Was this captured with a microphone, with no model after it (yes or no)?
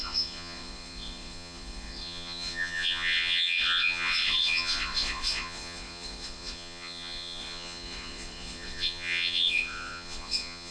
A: no